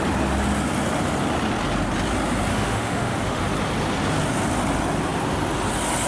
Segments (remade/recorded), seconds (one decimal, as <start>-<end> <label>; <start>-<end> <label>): 0.0-2.5 recorded; 2.5-3.4 remade; 3.4-6.1 recorded